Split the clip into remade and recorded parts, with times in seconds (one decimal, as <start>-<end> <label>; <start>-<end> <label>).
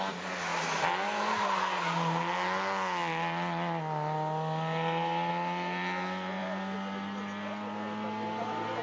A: 0.0-8.8 recorded